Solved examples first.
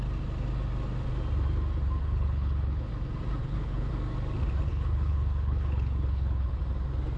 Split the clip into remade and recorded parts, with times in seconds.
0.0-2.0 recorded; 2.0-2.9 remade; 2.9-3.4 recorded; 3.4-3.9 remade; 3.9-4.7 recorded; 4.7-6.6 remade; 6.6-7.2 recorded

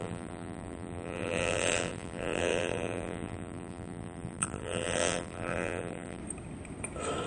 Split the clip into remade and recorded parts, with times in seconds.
0.0-6.2 remade; 6.2-7.3 recorded

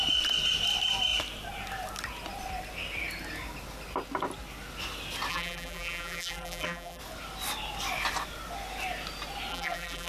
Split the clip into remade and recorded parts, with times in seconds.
0.0-5.3 recorded; 5.3-7.0 remade; 7.0-9.5 recorded; 9.5-10.1 remade

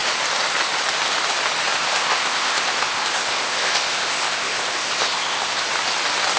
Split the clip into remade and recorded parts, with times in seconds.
0.0-1.8 recorded; 1.8-5.6 remade; 5.6-6.4 recorded

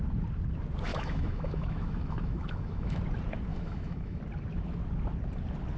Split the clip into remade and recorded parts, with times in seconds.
0.0-0.9 recorded; 0.9-3.0 remade; 3.0-3.5 recorded; 3.5-4.2 remade; 4.2-5.8 recorded

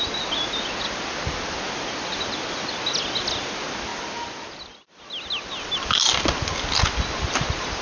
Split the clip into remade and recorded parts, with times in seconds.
0.0-7.8 recorded

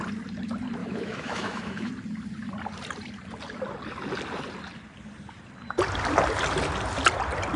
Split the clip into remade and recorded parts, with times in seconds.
0.0-0.8 recorded; 0.8-1.9 remade; 1.9-7.6 recorded